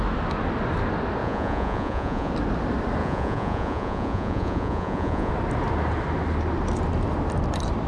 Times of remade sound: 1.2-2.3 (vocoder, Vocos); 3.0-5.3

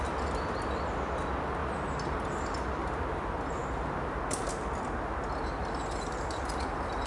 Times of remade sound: none

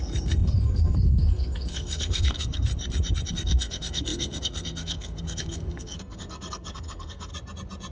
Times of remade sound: 0.0-2.7 (codec, SNAC); 3.3-7.3